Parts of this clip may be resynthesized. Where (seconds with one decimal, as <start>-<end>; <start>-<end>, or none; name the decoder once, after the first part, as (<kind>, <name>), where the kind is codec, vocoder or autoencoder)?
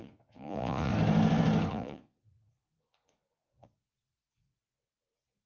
0.0-0.9 (vocoder, Vocos); 1.7-5.5